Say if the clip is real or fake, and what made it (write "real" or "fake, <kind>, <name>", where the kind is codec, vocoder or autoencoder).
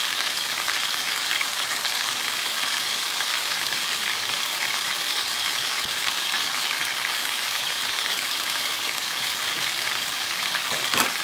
fake, codec, DAC